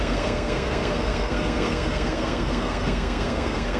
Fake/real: fake